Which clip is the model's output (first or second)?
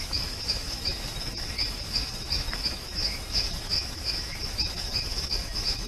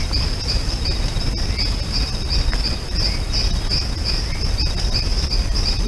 first